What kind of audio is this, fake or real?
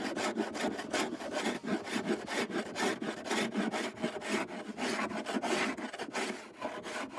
real